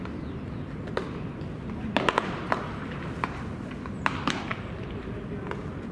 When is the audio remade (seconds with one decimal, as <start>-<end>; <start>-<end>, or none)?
none